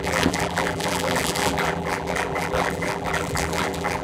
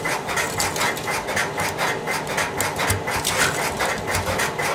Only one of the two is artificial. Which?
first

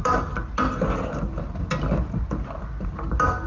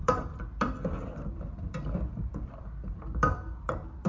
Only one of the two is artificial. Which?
second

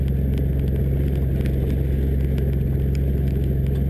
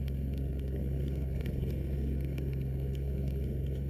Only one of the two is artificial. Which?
second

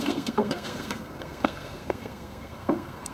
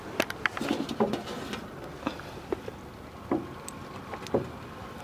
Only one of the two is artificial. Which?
first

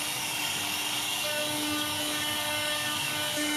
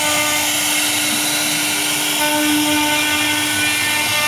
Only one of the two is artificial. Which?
first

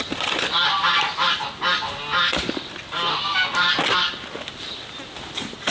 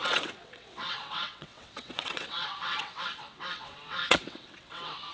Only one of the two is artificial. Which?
second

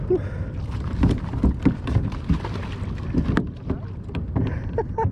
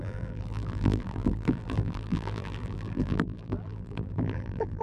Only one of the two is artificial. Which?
second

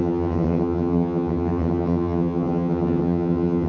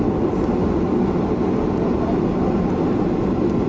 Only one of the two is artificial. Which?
first